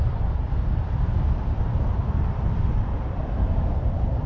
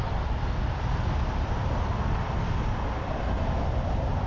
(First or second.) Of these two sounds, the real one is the second